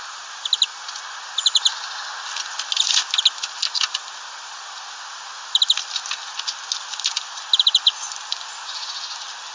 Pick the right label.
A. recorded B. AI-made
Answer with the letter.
A